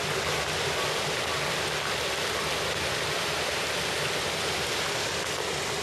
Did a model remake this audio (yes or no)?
no